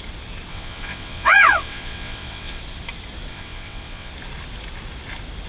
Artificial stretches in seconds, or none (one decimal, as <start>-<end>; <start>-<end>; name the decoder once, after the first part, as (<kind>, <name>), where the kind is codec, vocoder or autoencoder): 0.5-2.6 (vocoder, WaveNeXt); 3.3-4.1